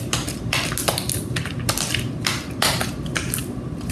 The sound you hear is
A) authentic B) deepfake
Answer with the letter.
A